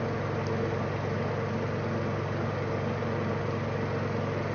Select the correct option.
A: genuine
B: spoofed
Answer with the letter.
A